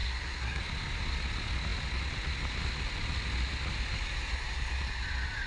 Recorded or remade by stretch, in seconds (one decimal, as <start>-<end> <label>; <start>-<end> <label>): 0.0-0.6 remade; 0.6-5.5 recorded